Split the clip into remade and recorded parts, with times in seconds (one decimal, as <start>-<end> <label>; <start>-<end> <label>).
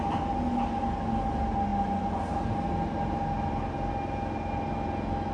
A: 0.0-5.3 recorded